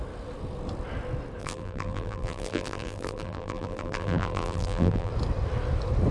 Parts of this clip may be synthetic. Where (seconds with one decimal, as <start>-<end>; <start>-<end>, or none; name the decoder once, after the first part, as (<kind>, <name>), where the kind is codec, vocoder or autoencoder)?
1.4-5.1 (vocoder, BigVGAN v2)